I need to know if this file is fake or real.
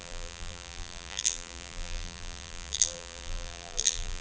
fake